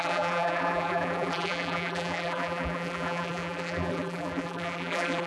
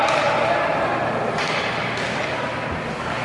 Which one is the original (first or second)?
second